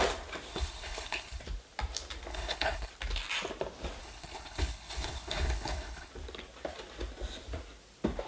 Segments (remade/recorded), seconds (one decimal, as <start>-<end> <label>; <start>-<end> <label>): 0.0-0.5 recorded; 0.5-1.4 remade; 1.4-2.3 recorded; 2.3-2.9 remade; 2.9-4.0 recorded; 4.0-6.1 remade; 6.1-8.3 recorded